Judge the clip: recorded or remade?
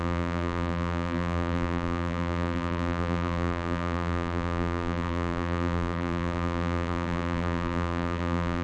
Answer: remade